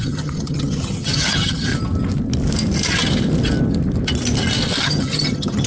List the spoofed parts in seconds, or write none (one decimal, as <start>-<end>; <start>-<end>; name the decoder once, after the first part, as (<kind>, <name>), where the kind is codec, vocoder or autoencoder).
0.0-1.7 (vocoder, HiFi-GAN); 4.8-5.7